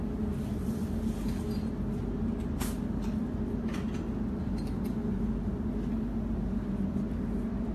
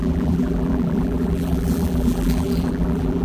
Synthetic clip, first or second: second